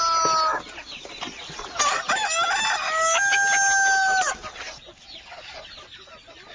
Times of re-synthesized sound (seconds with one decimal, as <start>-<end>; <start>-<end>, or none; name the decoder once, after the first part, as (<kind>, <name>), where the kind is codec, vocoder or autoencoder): none